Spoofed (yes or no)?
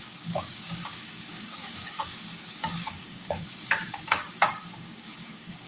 yes